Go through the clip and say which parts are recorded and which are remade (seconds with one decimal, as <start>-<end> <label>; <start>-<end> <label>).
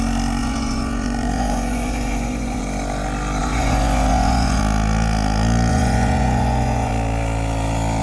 0.0-0.4 recorded; 0.4-2.6 remade; 2.6-3.4 recorded; 3.4-4.6 remade; 4.6-5.7 recorded; 5.7-6.9 remade; 6.9-8.0 recorded